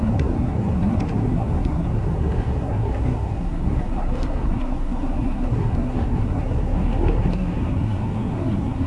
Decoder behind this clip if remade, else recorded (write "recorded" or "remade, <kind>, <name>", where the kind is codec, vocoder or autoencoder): remade, codec, SNAC